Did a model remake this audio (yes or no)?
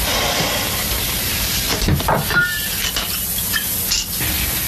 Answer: no